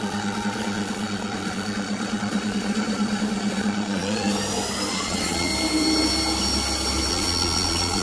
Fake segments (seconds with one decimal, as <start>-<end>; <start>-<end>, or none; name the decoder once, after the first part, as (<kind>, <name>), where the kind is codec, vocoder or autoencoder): 0.0-4.3 (vocoder, Vocos); 4.9-5.5; 7.1-8.0